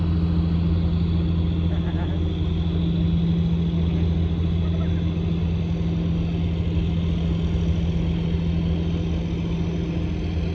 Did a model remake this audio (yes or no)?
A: no